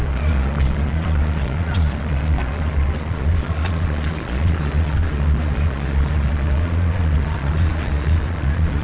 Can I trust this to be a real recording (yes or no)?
no